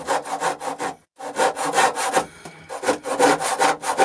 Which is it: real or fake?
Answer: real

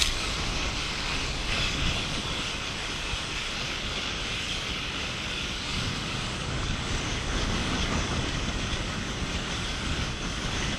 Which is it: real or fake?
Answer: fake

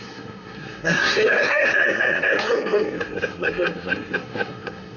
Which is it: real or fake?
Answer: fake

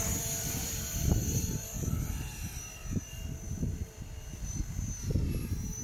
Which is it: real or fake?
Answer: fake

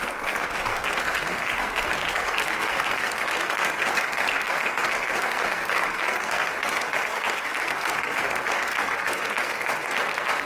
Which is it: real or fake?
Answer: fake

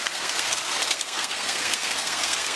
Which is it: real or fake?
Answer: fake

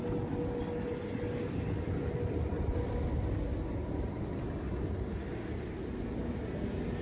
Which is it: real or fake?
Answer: real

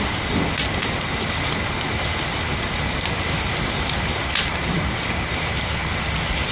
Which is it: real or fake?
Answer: real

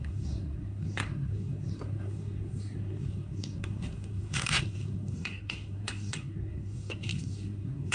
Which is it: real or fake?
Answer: fake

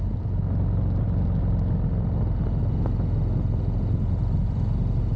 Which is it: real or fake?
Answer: real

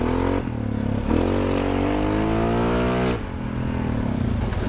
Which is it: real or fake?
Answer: real